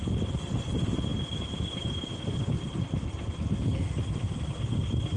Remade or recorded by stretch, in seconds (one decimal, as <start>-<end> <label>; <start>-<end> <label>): 0.0-5.2 recorded